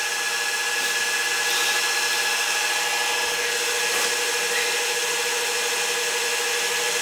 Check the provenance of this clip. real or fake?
real